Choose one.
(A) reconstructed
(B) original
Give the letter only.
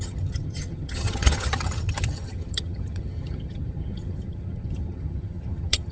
A